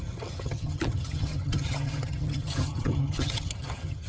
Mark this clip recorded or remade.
remade